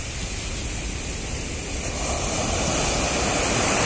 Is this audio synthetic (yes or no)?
no